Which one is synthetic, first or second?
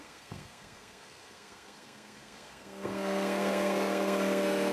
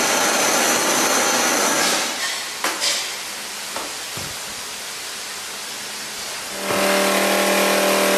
first